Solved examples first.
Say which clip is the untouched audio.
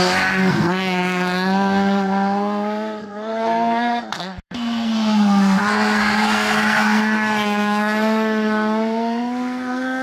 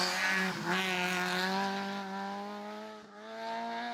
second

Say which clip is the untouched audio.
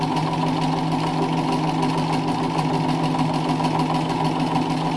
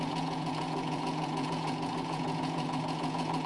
first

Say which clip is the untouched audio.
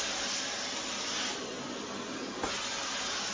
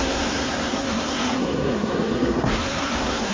first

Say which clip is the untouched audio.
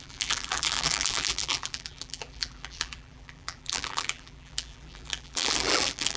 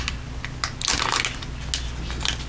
second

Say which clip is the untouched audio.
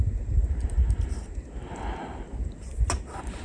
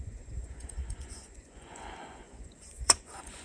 first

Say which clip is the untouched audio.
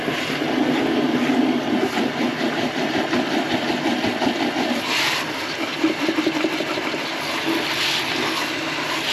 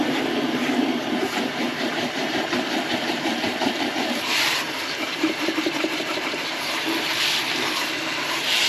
first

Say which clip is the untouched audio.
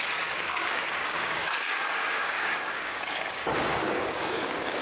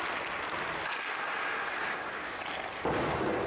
second